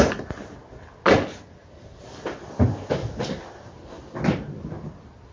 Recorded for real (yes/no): yes